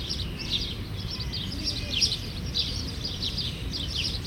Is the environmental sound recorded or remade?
remade